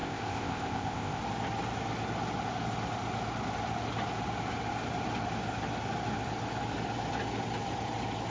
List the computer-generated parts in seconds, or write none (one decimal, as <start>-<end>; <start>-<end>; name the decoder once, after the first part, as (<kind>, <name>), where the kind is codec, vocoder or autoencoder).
0.0-1.2 (codec, ZipCodec)